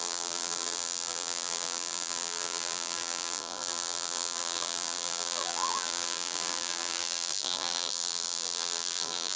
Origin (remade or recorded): remade